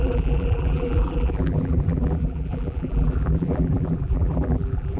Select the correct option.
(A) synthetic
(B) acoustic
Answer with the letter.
A